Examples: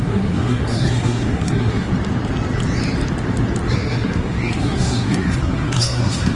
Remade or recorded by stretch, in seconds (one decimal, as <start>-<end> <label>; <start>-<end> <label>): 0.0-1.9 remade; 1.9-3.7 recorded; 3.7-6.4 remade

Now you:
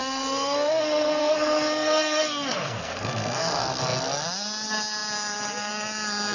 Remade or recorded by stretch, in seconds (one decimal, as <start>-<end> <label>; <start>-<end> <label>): 0.0-3.8 remade; 3.8-6.3 recorded

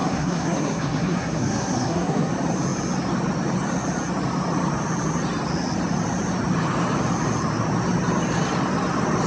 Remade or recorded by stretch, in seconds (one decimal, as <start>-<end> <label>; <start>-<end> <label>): 0.0-2.3 remade; 2.3-9.3 recorded

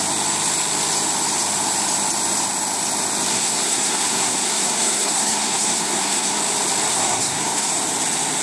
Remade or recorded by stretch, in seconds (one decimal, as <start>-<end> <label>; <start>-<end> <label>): 0.0-3.3 recorded; 3.3-6.4 remade; 6.4-6.9 recorded; 6.9-7.7 remade; 7.7-8.4 recorded

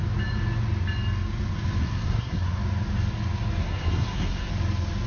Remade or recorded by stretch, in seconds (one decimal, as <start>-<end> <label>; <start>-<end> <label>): 0.0-1.8 recorded; 1.8-2.6 remade; 2.6-3.6 recorded; 3.6-4.5 remade; 4.5-5.1 recorded